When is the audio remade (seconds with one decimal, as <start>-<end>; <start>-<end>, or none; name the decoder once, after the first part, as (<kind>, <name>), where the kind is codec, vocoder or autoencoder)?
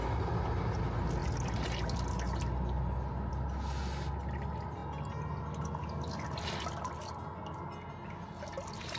none